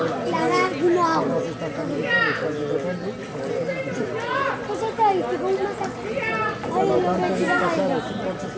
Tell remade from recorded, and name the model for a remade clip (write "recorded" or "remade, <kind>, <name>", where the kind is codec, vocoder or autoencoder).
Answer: recorded